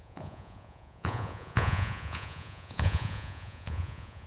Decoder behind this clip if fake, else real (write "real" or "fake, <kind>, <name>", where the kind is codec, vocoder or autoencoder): fake, vocoder, Vocos